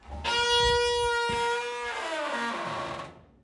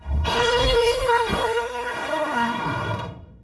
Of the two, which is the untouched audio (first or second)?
first